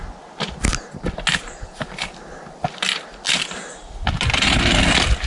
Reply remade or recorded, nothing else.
recorded